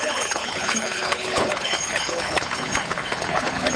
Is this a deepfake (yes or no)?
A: yes